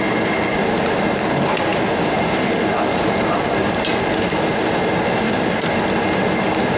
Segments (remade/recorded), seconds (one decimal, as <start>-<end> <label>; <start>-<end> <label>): 0.0-6.8 recorded